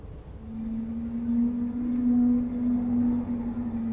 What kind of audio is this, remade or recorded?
recorded